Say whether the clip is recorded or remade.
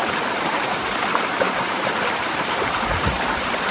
remade